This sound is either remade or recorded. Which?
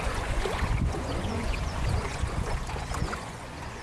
remade